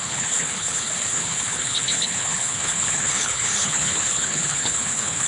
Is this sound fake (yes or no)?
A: yes